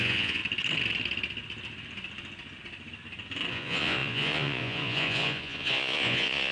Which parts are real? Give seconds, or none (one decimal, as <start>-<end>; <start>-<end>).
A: 0.4-3.5